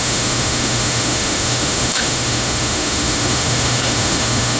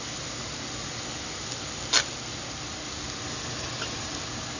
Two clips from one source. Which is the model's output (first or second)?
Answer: first